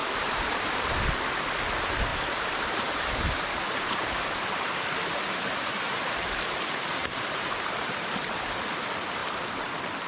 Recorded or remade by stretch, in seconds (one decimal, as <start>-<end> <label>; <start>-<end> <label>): 0.0-0.7 remade; 0.7-2.1 recorded; 2.1-6.4 remade; 6.4-7.0 recorded; 7.0-8.5 remade; 8.5-9.2 recorded; 9.2-10.1 remade